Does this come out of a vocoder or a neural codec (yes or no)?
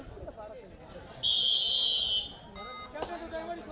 no